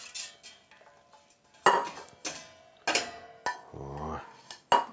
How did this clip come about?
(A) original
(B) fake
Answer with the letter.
A